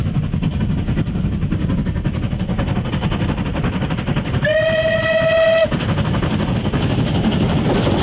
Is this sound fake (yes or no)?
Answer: no